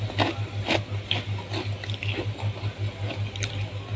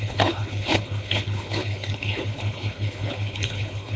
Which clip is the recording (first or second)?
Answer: first